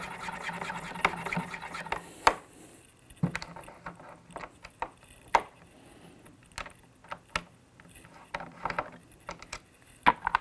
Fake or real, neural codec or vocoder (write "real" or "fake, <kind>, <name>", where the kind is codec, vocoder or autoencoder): real